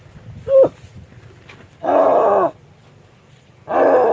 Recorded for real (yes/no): yes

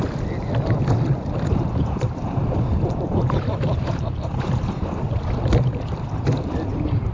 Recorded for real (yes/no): no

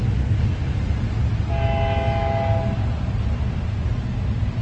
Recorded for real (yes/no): yes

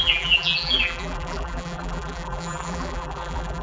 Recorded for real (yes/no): no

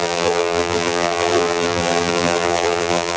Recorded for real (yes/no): no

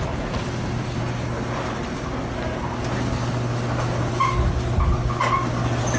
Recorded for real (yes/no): yes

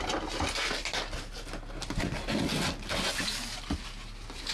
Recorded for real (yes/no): yes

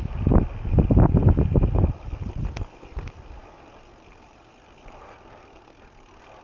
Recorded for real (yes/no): yes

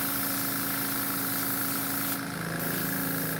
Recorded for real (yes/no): yes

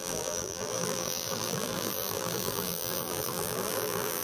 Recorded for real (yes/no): no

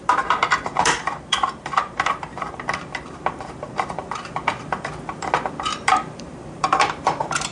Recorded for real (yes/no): no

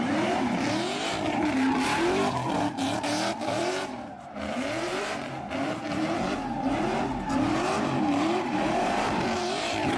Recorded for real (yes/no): no